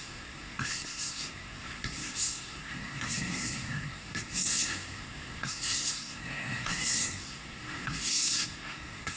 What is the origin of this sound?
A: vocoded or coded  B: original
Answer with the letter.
A